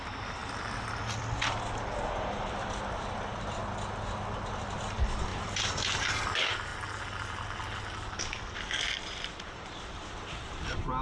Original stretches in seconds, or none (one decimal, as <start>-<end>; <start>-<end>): 0.4-2.1; 3.6-4.5; 6.7-9.0